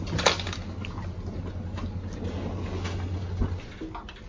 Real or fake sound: real